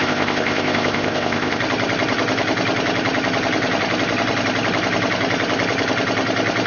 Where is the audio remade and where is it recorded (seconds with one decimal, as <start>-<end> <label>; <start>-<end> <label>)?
0.0-1.6 remade; 1.6-6.7 recorded